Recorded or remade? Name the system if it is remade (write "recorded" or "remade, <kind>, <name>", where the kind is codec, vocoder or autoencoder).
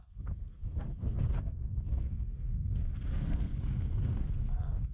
remade, codec, SNAC